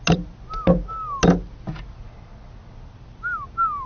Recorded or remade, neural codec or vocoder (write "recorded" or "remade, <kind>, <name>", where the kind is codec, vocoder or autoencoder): recorded